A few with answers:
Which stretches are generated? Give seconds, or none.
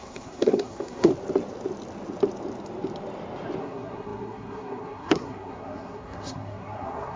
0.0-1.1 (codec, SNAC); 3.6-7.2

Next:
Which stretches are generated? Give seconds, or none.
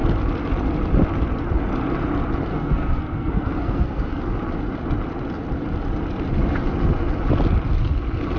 2.5-4.2 (codec, SNAC)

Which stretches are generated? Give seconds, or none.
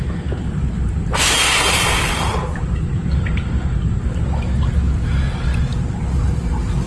none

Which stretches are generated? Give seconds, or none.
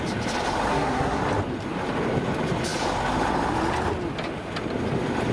0.7-1.2 (codec, SNAC)